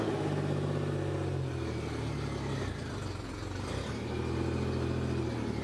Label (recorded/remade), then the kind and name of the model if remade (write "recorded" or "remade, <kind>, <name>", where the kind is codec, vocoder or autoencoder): recorded